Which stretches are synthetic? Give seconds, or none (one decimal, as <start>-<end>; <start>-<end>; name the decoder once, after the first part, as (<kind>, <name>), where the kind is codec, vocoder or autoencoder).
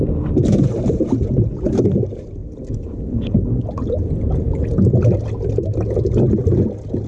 0.0-2.4 (vocoder, BigVGAN v2)